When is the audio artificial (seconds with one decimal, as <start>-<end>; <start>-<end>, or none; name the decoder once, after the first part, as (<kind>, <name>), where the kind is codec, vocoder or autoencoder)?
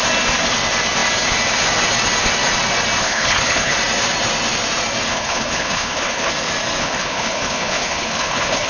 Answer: 3.0-3.7 (codec, HILCodec); 5.1-6.3; 6.8-8.7